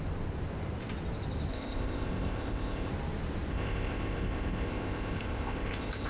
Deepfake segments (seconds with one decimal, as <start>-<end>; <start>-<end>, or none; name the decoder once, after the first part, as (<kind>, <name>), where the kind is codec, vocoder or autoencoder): 1.5-2.9 (codec, ZipCodec); 3.5-6.1